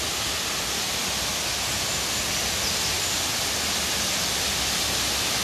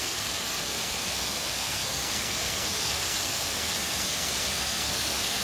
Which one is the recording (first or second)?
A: first